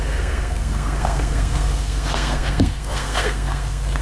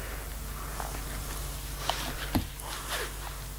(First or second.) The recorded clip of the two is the second